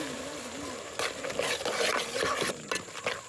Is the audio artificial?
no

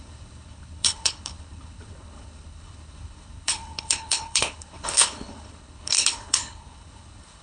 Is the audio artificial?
yes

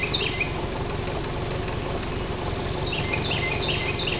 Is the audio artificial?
no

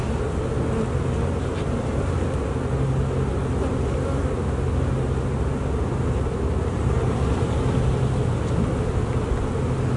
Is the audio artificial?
no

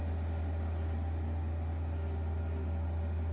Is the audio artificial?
no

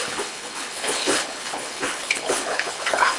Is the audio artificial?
yes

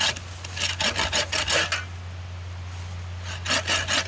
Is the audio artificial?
no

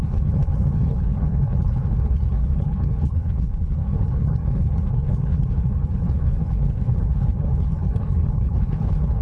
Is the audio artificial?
yes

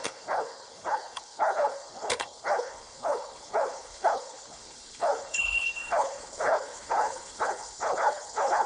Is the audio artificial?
yes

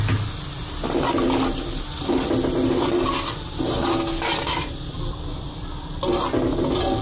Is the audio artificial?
no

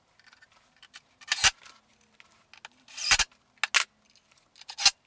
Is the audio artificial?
no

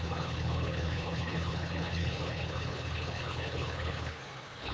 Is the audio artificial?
yes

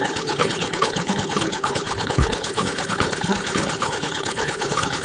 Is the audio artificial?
yes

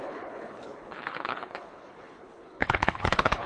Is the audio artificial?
yes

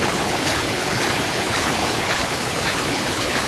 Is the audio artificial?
yes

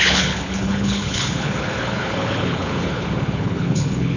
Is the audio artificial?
yes